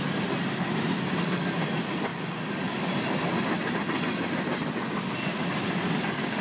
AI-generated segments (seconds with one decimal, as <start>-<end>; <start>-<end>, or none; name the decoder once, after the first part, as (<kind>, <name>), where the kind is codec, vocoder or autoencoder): none